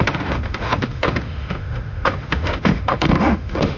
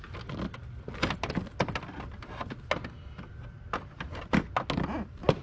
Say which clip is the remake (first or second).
first